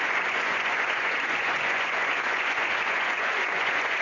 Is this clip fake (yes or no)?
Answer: yes